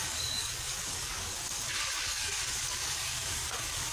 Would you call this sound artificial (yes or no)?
yes